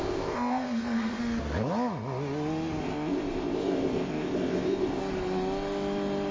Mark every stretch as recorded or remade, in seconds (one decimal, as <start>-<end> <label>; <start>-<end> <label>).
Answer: 0.0-1.2 remade; 1.2-2.8 recorded; 2.8-5.0 remade; 5.0-6.3 recorded